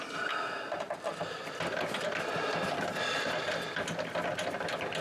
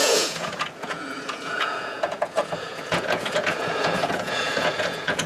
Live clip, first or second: first